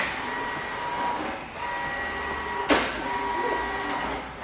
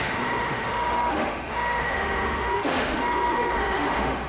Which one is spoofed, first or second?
second